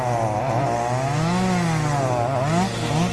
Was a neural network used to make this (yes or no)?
no